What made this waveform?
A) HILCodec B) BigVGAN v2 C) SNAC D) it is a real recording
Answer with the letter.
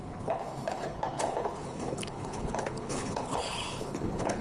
A